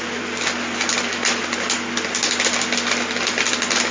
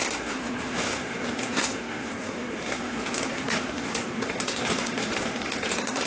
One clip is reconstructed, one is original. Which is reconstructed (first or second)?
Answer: second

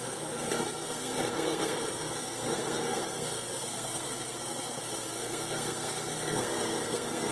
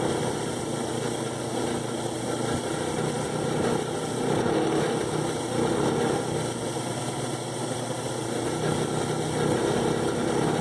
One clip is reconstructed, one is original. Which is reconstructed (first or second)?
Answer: first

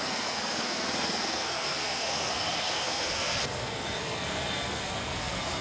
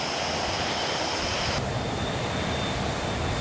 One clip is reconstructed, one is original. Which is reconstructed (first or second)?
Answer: first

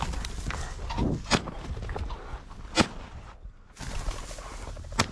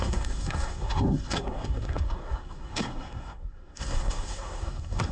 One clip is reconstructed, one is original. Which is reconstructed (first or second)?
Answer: second